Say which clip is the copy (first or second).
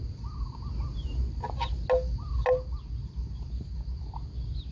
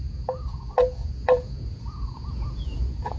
second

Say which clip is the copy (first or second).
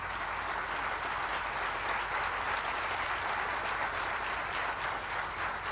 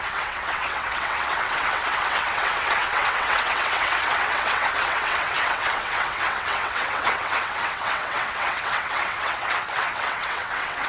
second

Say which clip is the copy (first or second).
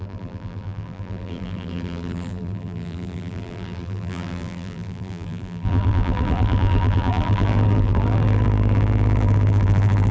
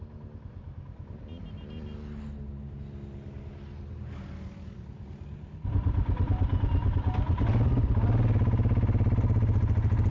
first